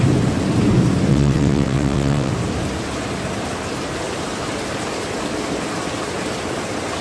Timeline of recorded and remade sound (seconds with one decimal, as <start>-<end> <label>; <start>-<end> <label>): 0.0-1.1 recorded; 1.1-2.3 remade; 2.3-7.0 recorded